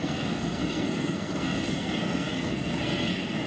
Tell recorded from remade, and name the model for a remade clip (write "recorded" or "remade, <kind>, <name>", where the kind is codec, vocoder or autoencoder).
remade, codec, SNAC